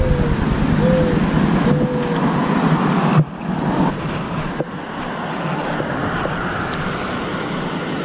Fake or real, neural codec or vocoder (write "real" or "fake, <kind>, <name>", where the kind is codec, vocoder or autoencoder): real